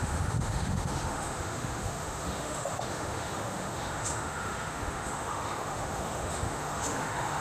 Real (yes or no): no